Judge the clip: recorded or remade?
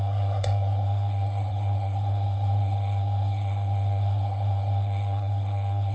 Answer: remade